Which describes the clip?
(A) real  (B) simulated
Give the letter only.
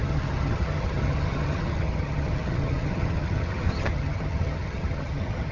B